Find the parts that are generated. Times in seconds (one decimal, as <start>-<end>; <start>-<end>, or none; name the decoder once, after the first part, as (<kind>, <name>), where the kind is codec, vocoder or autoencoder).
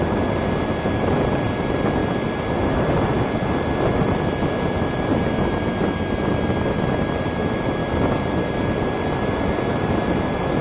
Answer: none